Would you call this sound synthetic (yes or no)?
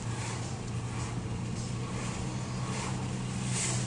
no